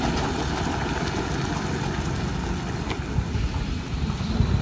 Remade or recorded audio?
recorded